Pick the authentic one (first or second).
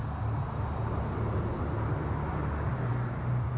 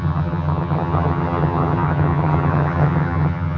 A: first